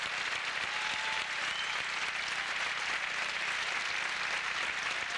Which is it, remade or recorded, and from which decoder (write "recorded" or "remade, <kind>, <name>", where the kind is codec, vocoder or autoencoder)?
recorded